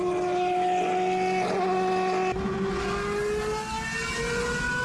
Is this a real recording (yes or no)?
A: yes